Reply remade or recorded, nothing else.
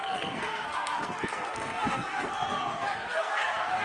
remade